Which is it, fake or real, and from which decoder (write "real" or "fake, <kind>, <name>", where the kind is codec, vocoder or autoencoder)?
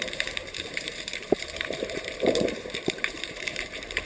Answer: fake, vocoder, BigVGAN v2